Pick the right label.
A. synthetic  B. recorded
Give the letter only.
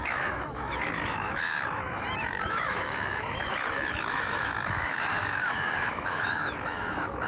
A